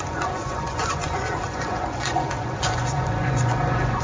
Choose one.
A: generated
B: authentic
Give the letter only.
A